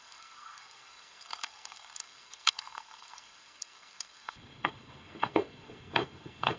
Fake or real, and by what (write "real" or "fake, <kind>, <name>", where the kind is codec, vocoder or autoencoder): fake, codec, SNAC